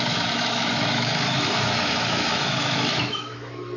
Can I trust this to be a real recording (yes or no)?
no